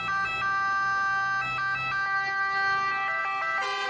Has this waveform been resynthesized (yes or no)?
no